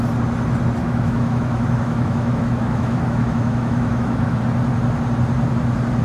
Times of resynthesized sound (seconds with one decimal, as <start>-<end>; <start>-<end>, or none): 0.8-4.4